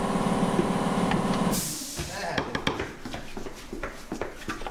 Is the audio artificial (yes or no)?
no